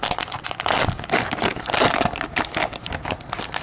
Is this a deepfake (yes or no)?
no